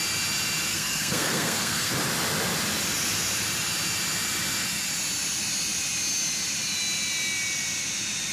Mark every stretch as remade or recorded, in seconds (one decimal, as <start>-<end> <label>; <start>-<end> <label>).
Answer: 0.0-0.7 recorded; 0.7-1.9 remade; 1.9-8.3 recorded

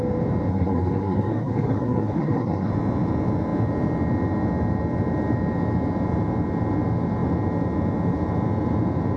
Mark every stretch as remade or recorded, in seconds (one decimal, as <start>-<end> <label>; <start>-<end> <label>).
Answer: 0.0-0.5 recorded; 0.5-2.7 remade; 2.7-9.2 recorded

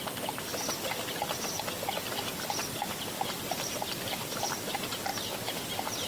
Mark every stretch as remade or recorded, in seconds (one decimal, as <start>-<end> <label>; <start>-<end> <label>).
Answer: 0.0-6.1 recorded